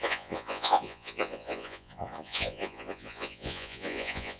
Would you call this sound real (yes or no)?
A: no